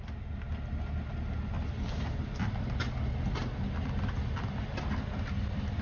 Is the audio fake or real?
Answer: real